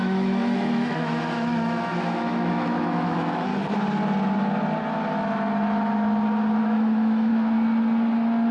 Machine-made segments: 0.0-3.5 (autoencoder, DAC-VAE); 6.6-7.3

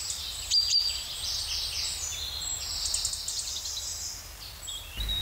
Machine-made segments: none

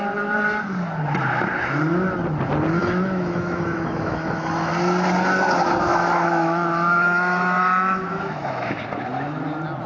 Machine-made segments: 2.8-4.7 (autoencoder, DAC-VAE); 5.9-8.8

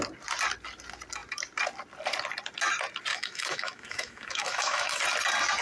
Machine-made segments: 3.1-5.0 (autoencoder, DAC-VAE)

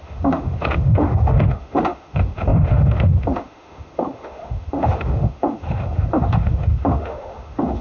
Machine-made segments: 0.0-7.8 (autoencoder, DAC-VAE)